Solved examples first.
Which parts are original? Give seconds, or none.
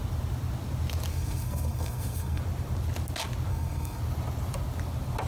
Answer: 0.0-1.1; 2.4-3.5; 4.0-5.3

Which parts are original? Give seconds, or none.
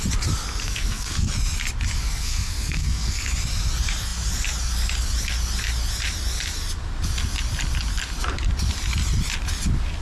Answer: 0.0-0.6; 1.3-2.0; 3.3-10.0